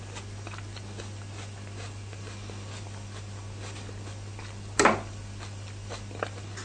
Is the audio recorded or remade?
recorded